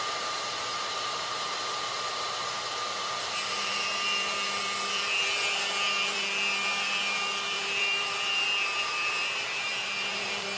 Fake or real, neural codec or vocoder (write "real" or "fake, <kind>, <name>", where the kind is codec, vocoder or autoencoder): fake, vocoder, BigVGAN v2